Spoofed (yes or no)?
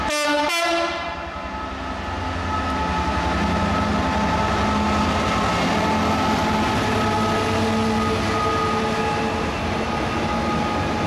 no